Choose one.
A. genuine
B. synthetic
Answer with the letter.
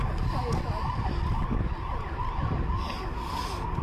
A